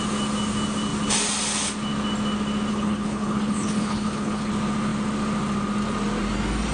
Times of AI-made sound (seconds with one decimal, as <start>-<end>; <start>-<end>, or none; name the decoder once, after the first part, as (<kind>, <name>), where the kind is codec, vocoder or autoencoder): 2.7-4.5 (codec, HILCodec)